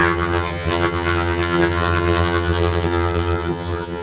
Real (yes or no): no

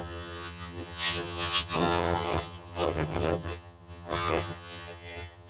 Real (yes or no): no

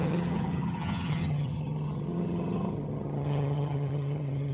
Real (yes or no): no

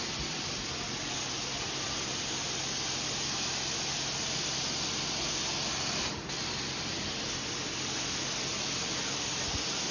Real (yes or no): yes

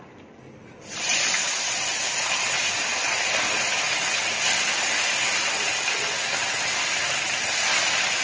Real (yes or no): yes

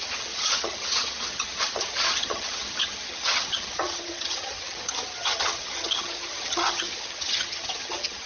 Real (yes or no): no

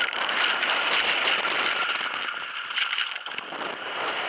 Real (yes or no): yes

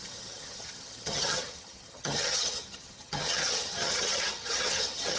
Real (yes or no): no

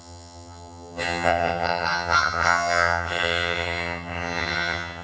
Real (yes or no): no